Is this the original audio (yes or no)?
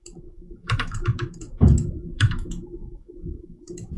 no